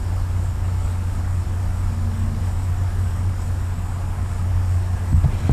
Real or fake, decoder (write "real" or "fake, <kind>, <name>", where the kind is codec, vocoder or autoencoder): fake, codec, DAC